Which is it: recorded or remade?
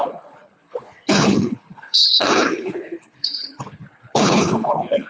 remade